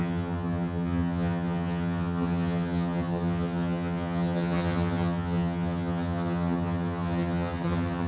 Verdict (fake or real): fake